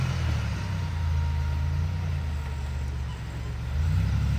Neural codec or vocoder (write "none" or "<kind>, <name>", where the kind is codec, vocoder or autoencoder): none